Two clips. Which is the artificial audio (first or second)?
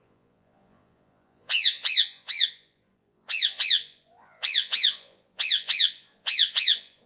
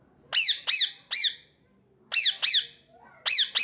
first